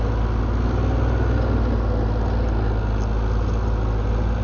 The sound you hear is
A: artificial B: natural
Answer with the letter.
B